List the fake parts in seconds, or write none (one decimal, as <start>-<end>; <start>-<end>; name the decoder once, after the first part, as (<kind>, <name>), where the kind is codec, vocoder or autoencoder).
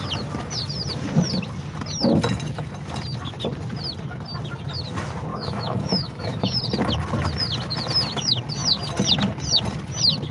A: 5.3-6.6 (autoencoder, DAC-VAE)